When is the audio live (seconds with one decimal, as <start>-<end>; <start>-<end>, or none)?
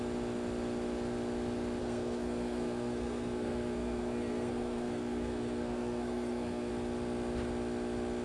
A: 0.0-1.8; 6.7-8.2